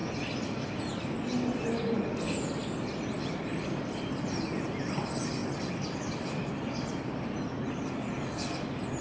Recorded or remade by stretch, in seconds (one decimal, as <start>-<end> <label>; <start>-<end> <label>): 0.0-9.0 recorded